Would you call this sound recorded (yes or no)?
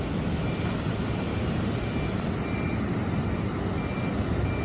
yes